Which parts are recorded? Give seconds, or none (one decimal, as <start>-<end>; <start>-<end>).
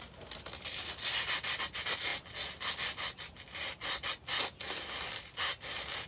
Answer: 0.0-6.1